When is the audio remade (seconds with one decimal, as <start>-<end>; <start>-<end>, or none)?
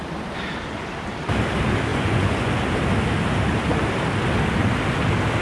1.9-2.5